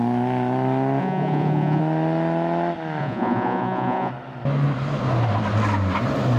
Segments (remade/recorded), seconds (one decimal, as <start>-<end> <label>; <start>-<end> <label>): 0.0-1.0 recorded; 1.0-1.8 remade; 1.8-3.0 recorded; 3.0-4.1 remade; 4.1-6.4 recorded